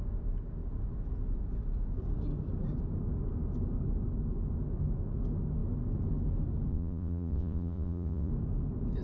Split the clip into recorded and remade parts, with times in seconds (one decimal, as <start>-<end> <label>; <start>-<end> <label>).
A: 0.0-6.7 recorded; 6.7-8.3 remade; 8.3-9.0 recorded